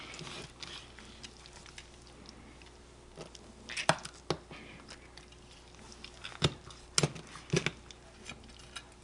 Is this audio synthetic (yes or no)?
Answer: no